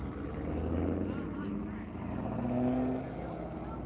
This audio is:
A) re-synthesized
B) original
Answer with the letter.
B